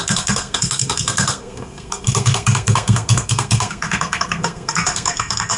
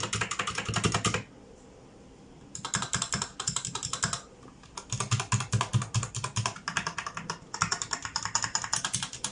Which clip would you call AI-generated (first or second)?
first